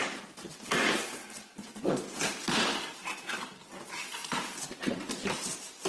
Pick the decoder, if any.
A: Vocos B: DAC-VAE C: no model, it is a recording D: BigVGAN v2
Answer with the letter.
D